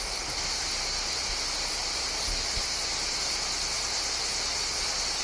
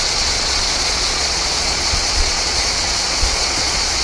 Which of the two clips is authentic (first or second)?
first